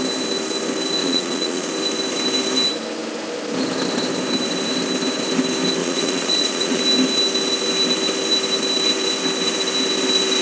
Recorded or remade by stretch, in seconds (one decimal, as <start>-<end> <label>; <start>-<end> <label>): 0.0-1.0 recorded; 1.0-1.7 remade; 1.7-5.8 recorded; 5.8-6.8 remade; 6.8-10.4 recorded